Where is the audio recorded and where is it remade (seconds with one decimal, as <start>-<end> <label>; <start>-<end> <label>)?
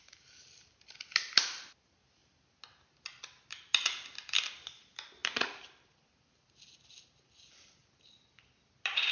0.0-9.1 recorded